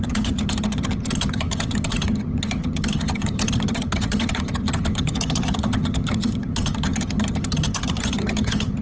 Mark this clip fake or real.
fake